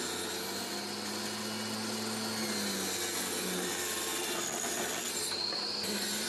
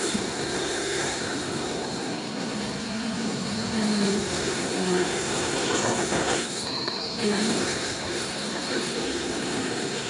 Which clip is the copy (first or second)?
second